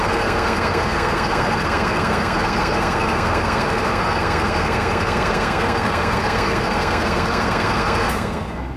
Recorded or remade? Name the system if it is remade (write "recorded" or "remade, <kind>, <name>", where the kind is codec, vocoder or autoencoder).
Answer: remade, codec, SNAC